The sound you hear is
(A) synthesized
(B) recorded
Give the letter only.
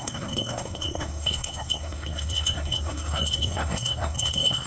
A